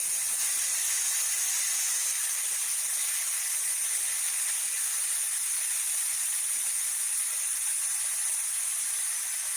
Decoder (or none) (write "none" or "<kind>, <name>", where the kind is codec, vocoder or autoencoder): none